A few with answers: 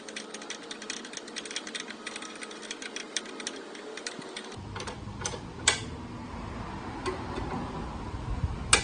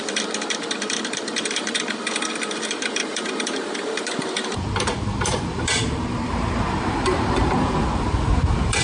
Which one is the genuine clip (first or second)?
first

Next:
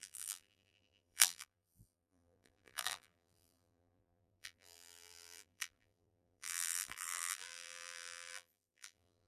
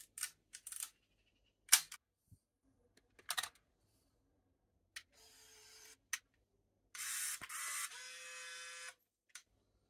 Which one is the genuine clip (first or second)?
second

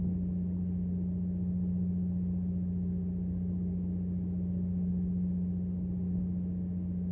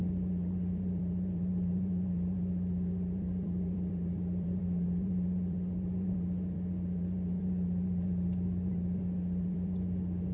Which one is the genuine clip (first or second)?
first